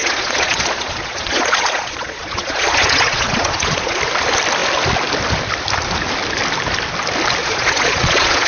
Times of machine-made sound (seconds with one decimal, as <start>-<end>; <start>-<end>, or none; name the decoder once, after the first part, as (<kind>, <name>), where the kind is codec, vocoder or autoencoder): 0.0-4.0 (vocoder, Vocos); 7.4-8.5